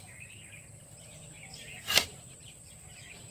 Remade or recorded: remade